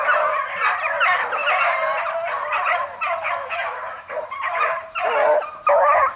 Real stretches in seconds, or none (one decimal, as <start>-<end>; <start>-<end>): 0.0-1.4; 5.1-6.2